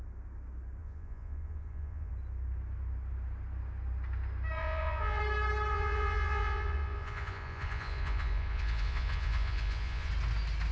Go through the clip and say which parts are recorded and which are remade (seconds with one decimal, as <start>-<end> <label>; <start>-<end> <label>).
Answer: 0.0-0.8 recorded; 0.8-2.1 remade; 2.1-4.6 recorded; 4.6-5.2 remade; 5.2-5.7 recorded; 5.7-10.1 remade; 10.1-10.7 recorded